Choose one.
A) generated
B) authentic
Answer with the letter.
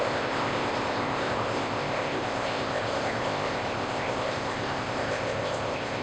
A